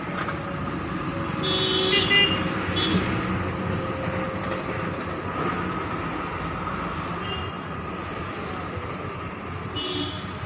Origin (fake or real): real